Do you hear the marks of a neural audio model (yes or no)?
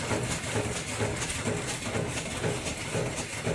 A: no